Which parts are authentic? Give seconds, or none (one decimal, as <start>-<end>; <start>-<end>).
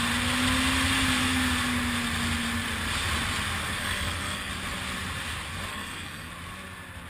0.0-3.6; 4.5-5.7; 6.3-7.1